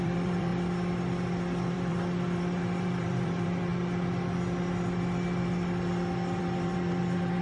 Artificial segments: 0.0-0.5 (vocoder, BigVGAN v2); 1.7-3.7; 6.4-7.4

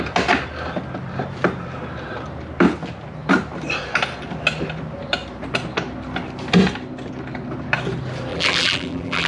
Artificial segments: 8.3-9.3 (vocoder, BigVGAN v2)

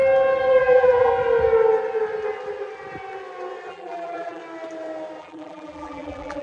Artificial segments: 0.6-1.1 (vocoder, BigVGAN v2); 3.7-4.4; 5.2-6.4

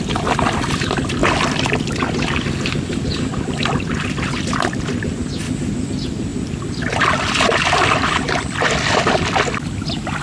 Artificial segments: none